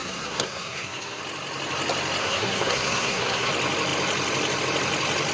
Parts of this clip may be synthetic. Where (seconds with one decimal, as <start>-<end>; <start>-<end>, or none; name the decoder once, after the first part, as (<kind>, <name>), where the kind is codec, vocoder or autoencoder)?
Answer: 0.0-1.2 (codec, SNAC); 2.2-3.5

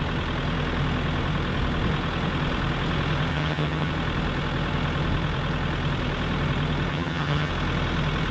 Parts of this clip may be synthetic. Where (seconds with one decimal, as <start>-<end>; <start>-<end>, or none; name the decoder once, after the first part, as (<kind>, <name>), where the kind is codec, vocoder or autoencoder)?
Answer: 3.3-3.9 (vocoder, HiFi-GAN); 6.9-7.5